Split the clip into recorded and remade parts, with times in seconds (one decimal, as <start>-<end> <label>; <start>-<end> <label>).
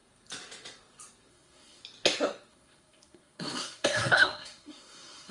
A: 0.0-1.3 recorded; 1.3-1.8 remade; 1.8-2.5 recorded; 2.5-5.3 remade